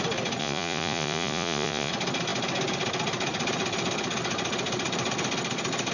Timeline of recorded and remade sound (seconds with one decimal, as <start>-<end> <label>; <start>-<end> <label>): 0.0-0.4 recorded; 0.4-1.9 remade; 1.9-5.9 recorded